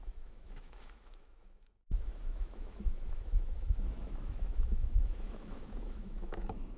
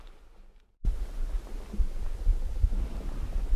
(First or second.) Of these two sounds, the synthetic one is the first